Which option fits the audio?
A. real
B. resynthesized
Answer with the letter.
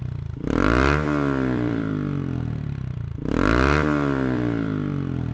B